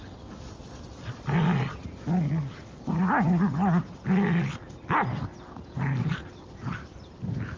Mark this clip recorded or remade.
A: recorded